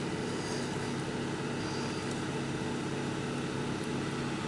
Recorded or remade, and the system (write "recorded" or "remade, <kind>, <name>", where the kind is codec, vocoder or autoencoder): recorded